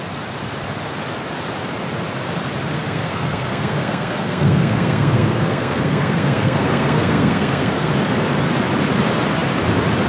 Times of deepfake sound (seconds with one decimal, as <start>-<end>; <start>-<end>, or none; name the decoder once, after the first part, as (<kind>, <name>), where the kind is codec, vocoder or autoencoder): 2.7-7.9 (codec, SNAC)